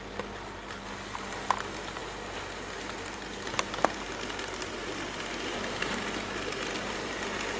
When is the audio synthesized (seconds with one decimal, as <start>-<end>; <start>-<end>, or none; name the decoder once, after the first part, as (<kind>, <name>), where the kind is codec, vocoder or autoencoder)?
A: none